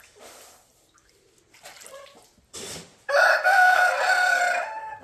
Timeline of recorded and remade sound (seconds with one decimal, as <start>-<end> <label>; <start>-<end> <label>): 0.0-3.3 recorded; 3.3-4.4 remade; 4.4-5.0 recorded

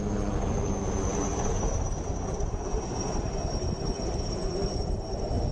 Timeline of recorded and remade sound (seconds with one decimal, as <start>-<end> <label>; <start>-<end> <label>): 0.0-1.3 recorded; 1.3-3.3 remade; 3.3-5.5 recorded

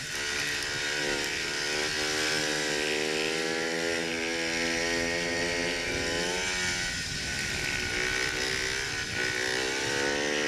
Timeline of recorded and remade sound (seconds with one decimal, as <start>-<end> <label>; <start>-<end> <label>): 0.0-10.5 recorded